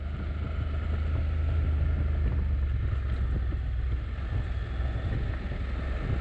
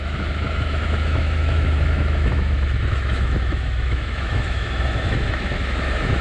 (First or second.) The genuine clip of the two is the first